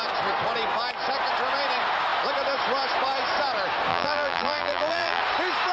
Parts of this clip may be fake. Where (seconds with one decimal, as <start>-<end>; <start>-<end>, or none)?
3.9-5.2